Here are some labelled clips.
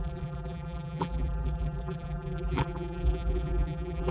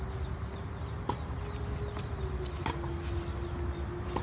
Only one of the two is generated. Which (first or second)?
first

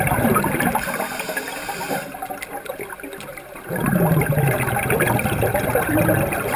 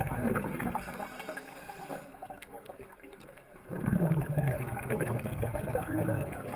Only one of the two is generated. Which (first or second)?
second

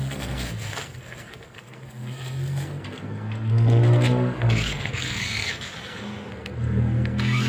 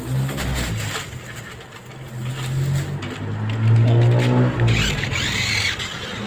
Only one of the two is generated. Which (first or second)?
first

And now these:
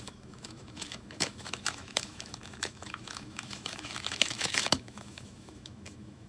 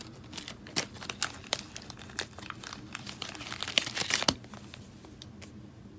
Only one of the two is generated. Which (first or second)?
first